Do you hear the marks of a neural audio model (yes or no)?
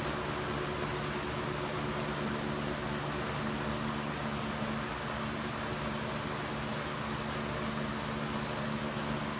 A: no